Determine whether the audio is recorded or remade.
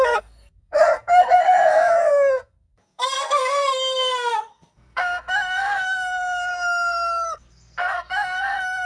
remade